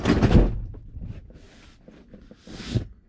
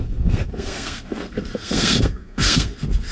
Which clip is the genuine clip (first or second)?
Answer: first